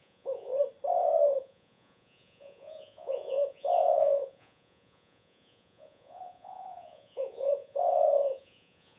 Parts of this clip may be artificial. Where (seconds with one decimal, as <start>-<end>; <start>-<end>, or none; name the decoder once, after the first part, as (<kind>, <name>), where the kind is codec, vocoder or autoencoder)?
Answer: 0.0-0.5 (vocoder, Vocos); 1.3-9.0